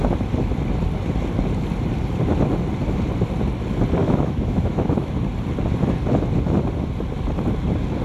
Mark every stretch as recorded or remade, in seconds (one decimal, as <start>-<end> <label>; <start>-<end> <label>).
0.0-4.0 recorded; 4.0-5.1 remade; 5.1-8.0 recorded